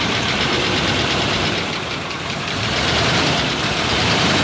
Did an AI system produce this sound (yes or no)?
yes